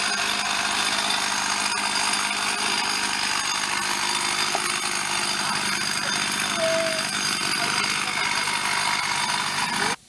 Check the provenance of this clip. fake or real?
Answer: real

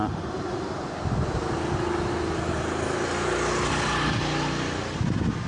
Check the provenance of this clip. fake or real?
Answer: real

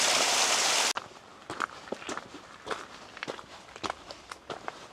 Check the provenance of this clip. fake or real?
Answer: real